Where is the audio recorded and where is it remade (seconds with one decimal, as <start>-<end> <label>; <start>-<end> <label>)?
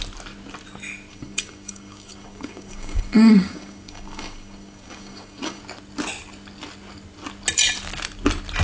0.0-1.1 recorded; 1.1-5.6 remade; 5.6-8.6 recorded